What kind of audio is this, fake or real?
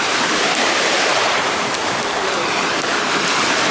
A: fake